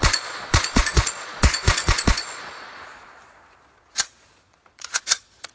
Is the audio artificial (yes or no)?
yes